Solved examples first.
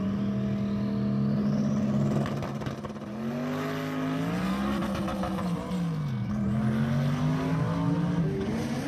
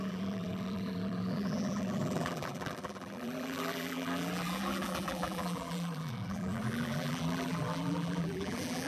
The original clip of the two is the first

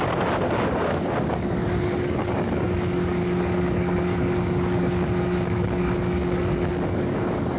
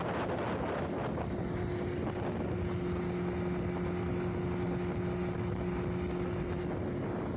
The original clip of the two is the second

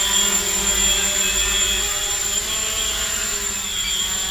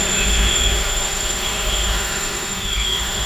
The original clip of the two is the first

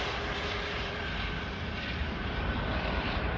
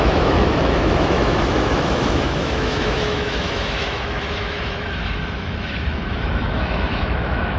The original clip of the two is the first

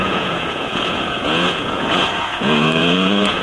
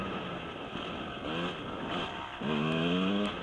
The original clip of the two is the second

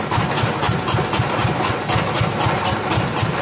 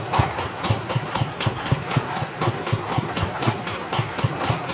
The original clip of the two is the first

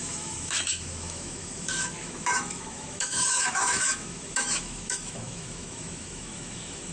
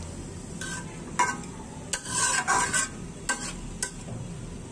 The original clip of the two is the second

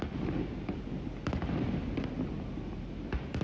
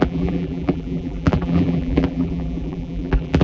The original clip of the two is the first